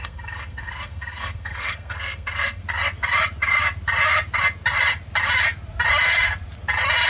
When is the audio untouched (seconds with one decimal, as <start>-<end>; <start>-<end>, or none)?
2.6-7.1